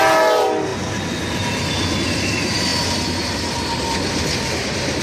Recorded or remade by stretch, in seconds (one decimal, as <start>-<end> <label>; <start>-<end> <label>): 0.0-0.7 recorded; 0.7-1.7 remade; 1.7-5.0 recorded